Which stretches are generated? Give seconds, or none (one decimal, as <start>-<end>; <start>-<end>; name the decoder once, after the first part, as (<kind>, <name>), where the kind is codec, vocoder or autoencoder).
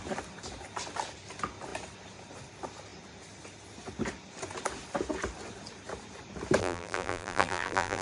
6.6-8.0 (vocoder, BigVGAN v2)